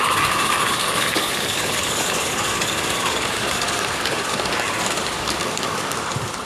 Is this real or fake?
fake